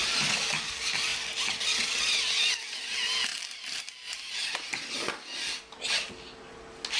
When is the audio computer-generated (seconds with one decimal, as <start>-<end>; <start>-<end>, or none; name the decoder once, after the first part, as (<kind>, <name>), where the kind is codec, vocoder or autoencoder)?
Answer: 0.0-0.5 (vocoder, BigVGAN v2); 3.3-3.8